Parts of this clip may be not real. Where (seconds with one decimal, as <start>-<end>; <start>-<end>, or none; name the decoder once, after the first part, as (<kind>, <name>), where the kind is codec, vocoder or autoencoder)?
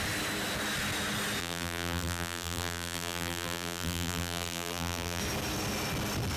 1.4-5.2 (vocoder, BigVGAN v2)